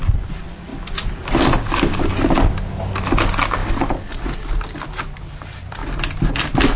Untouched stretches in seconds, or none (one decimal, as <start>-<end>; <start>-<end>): 0.0-6.8